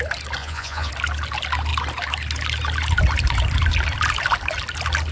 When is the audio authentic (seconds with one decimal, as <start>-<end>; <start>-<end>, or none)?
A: 0.0-0.4; 0.9-5.1